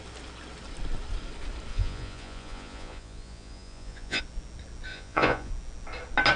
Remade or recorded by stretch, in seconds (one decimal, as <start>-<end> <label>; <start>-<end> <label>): 0.0-1.7 recorded; 1.7-4.2 remade; 4.2-4.9 recorded; 4.9-5.5 remade; 5.5-6.4 recorded